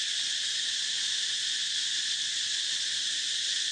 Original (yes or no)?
yes